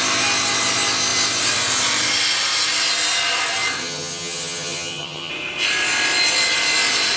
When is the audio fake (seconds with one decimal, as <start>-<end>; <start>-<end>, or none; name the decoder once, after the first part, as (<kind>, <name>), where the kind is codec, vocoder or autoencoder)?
3.8-5.3 (vocoder, HiFi-GAN)